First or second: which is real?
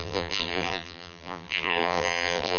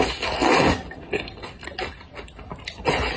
second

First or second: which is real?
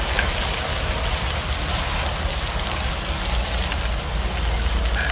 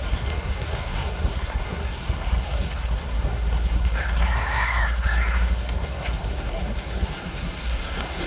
first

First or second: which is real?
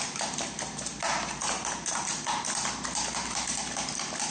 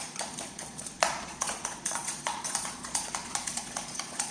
first